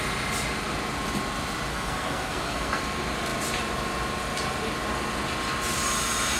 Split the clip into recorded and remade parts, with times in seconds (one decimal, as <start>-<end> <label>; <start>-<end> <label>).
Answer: 0.0-1.7 recorded; 1.7-2.8 remade; 2.8-6.4 recorded